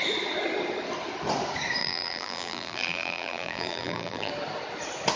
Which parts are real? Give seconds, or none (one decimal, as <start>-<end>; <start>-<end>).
0.0-1.8; 4.3-5.2